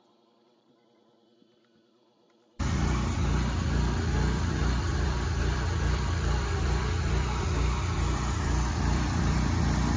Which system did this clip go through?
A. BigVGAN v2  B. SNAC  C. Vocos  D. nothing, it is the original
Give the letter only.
A